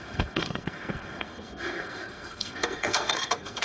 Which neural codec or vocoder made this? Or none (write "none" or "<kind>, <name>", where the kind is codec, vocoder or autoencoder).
codec, SNAC